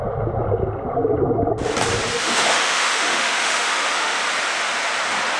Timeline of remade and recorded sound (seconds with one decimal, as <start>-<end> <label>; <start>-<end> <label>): 0.0-2.1 recorded; 2.1-4.2 remade; 4.2-5.4 recorded